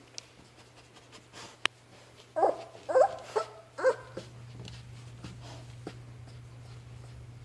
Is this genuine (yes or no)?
yes